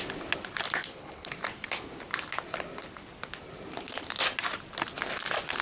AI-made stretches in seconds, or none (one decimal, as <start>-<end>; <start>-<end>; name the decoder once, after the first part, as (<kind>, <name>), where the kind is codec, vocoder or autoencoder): 0.8-1.3 (codec, HILCodec)